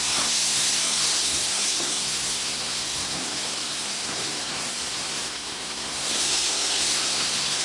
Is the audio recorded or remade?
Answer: remade